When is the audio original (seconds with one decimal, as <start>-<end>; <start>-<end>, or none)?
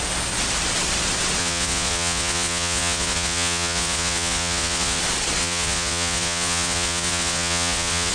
0.0-1.4; 5.0-5.4